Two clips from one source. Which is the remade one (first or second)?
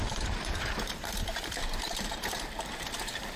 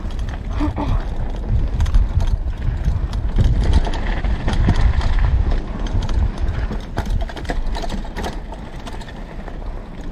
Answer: first